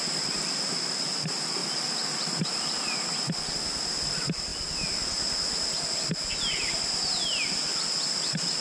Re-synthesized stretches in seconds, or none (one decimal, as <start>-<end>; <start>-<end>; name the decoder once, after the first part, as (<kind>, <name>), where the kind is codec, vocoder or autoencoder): none